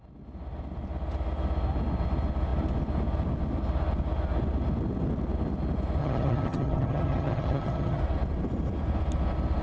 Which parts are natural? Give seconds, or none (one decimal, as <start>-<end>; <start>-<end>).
0.0-6.0; 8.0-9.6